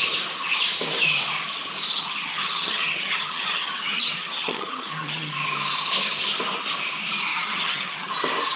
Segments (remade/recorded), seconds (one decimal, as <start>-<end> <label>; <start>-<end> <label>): 0.0-1.9 recorded; 1.9-5.3 remade; 5.3-7.3 recorded; 7.3-8.1 remade; 8.1-8.6 recorded